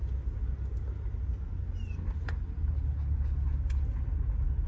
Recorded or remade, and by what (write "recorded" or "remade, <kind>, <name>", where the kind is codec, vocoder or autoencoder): recorded